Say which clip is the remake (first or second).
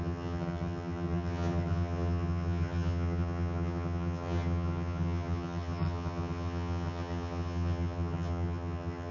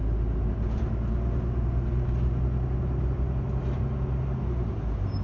first